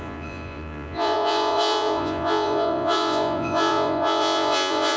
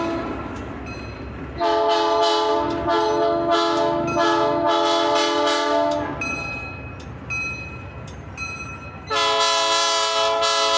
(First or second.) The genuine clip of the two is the second